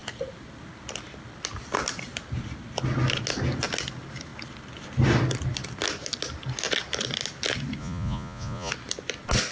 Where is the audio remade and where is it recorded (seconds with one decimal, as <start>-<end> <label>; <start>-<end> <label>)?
0.0-7.8 recorded; 7.8-8.7 remade; 8.7-9.5 recorded